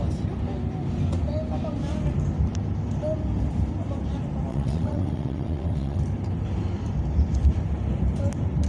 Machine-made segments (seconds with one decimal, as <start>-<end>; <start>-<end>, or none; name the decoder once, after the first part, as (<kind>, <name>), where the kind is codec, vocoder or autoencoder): 4.5-6.0 (vocoder, WaveNeXt)